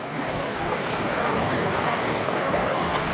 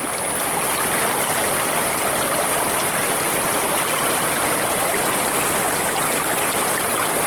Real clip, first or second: second